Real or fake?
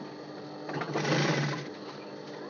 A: real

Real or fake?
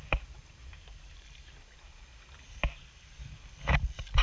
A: real